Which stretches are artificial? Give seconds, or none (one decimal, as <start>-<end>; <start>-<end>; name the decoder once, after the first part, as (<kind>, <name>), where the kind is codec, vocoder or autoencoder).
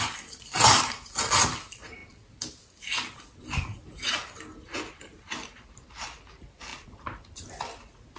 none